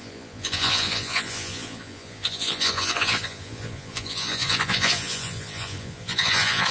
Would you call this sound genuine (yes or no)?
no